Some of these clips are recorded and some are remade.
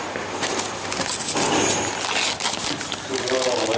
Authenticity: recorded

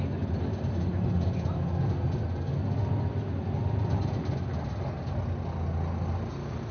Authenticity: recorded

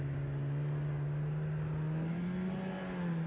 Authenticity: recorded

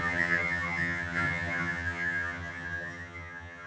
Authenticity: remade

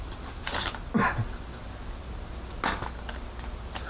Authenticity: recorded